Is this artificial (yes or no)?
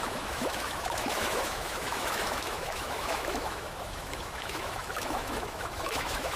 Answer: yes